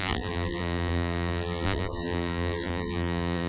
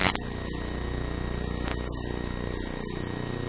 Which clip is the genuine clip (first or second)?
second